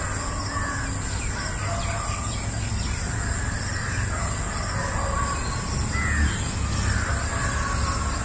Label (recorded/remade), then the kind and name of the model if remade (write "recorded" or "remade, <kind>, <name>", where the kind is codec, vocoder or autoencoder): recorded